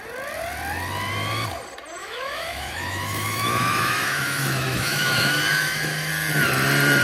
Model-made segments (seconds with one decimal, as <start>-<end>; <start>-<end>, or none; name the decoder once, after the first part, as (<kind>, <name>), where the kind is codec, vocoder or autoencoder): 2.0-6.1 (autoencoder, DAC-VAE)